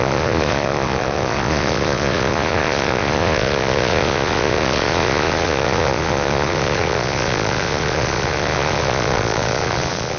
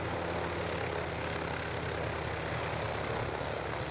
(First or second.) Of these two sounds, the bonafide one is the second